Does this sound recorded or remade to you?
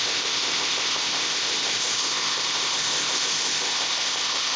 remade